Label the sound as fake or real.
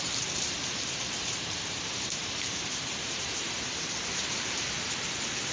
fake